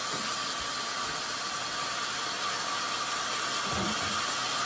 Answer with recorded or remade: recorded